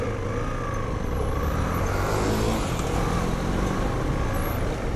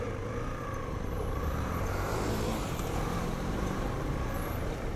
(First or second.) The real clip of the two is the first